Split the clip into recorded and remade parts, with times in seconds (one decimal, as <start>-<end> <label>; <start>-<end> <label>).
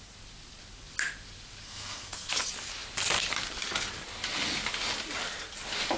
0.0-1.6 recorded; 1.6-2.3 remade; 2.3-6.0 recorded